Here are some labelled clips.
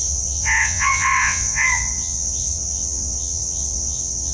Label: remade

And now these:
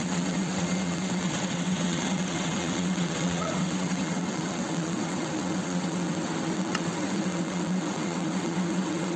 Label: remade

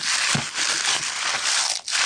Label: recorded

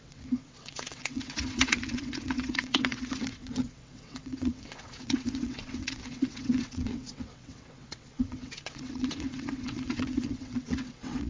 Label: remade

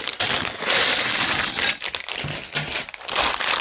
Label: recorded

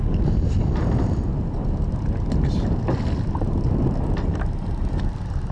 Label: recorded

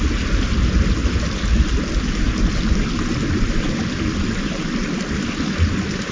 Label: recorded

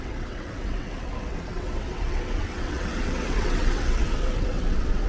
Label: remade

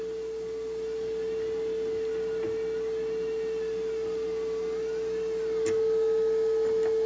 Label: recorded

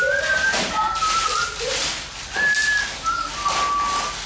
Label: recorded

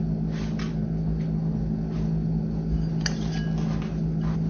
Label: recorded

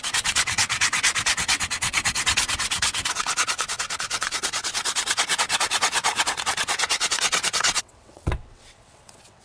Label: remade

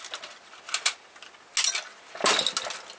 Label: recorded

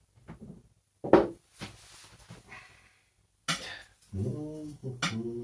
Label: recorded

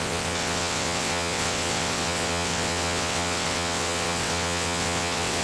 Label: remade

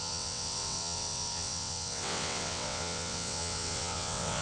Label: remade